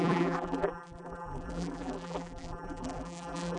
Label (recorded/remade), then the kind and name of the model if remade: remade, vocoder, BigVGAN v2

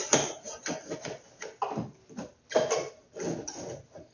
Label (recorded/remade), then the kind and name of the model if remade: recorded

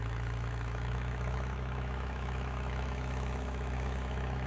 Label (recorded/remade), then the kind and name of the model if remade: remade, autoencoder, DAC-VAE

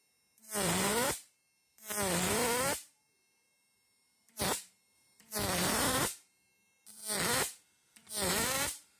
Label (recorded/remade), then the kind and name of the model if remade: remade, vocoder, BigVGAN v2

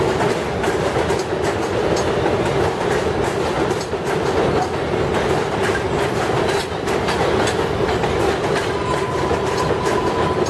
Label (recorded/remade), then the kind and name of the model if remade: recorded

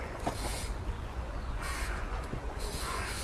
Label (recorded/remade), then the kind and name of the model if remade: remade, vocoder, Vocos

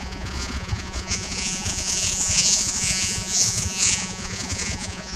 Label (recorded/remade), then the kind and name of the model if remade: remade, vocoder, Vocos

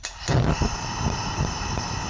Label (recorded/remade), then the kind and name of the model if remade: recorded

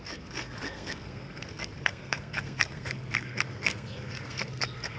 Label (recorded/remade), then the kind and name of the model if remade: remade, codec, SNAC